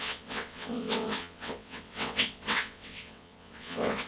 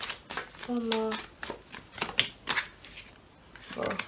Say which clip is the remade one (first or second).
first